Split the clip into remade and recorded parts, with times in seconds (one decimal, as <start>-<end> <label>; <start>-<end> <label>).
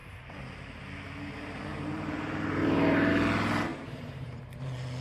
0.0-0.8 remade; 0.8-1.7 recorded; 1.7-3.1 remade; 3.1-3.7 recorded; 3.7-4.4 remade; 4.4-5.0 recorded